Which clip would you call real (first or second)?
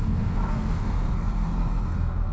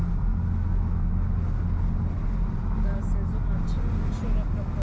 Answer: second